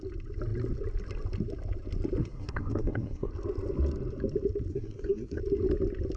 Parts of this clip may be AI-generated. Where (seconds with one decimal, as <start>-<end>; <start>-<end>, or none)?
2.2-3.3; 4.7-5.4